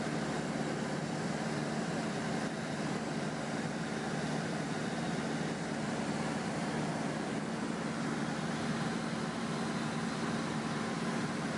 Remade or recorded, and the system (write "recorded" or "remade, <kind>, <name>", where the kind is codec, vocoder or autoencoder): recorded